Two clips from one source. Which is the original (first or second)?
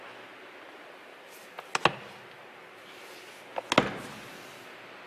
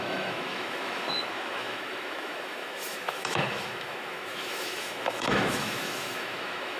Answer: first